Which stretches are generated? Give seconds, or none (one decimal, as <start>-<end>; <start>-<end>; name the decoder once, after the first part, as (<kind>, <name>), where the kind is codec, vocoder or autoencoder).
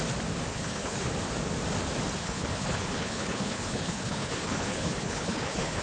0.5-1.1 (codec, HILCodec); 2.2-5.8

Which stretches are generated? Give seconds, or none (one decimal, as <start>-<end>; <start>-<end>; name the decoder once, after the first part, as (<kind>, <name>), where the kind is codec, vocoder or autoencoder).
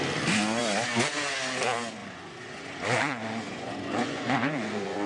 2.0-5.1 (vocoder, Vocos)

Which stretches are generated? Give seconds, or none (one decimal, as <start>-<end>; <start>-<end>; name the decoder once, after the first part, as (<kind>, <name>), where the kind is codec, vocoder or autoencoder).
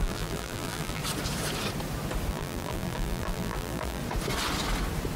0.0-1.0 (vocoder, BigVGAN v2); 2.3-4.0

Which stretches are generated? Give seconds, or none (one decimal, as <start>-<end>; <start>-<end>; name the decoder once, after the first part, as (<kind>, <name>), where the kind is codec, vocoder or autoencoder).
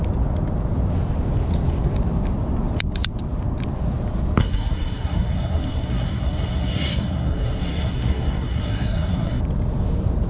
4.4-9.4 (codec, SNAC)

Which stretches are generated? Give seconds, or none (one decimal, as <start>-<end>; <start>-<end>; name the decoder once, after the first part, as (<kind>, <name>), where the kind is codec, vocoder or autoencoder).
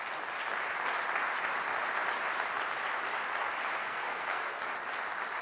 3.8-4.6 (codec, SNAC)